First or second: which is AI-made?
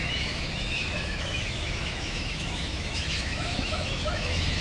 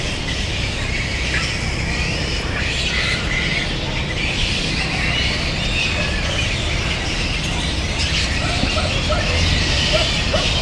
first